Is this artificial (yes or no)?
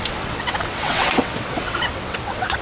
yes